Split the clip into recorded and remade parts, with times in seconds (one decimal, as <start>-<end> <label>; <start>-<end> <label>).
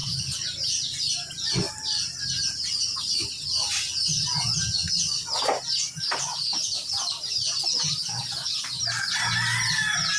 0.0-6.2 recorded; 6.2-8.9 remade; 8.9-10.2 recorded